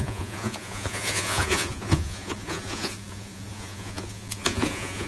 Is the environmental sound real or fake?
fake